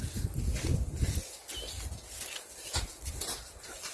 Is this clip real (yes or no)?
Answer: yes